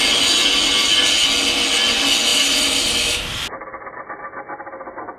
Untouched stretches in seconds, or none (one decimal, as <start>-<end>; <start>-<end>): 0.0-2.3; 2.9-5.2